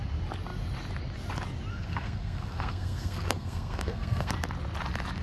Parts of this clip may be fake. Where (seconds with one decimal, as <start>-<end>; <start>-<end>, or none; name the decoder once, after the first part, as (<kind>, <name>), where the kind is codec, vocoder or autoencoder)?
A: 1.7-4.3 (codec, SNAC)